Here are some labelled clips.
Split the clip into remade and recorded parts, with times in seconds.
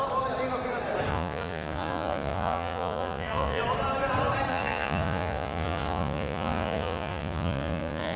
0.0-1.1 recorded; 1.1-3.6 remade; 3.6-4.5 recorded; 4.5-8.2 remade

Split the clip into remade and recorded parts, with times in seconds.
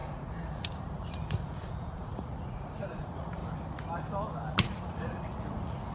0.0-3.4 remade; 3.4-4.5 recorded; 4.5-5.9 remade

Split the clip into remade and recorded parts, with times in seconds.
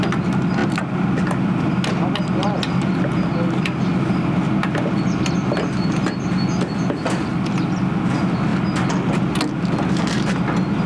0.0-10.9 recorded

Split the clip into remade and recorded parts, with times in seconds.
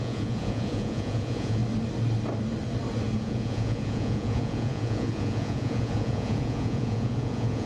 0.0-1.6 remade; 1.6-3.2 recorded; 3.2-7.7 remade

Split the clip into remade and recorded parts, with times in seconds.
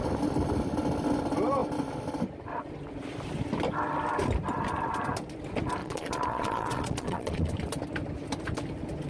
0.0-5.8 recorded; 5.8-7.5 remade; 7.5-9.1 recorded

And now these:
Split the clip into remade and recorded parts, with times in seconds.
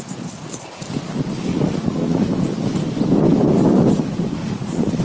0.0-1.5 recorded; 1.5-2.3 remade; 2.3-4.4 recorded; 4.4-5.0 remade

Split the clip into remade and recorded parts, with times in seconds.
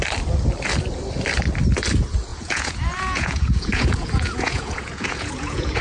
0.0-2.3 recorded; 2.3-5.8 remade